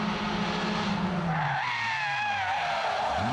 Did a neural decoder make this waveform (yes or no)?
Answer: no